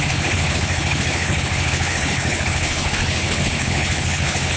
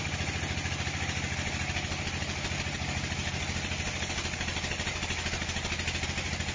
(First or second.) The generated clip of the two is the first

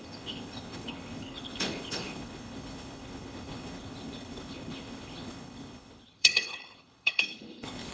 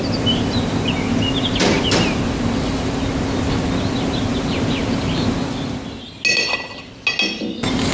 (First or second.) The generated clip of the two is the first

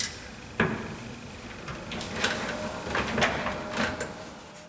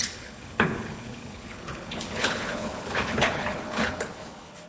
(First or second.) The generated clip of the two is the second